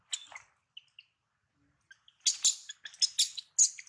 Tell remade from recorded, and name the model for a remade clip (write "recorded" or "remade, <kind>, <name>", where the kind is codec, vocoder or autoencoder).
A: recorded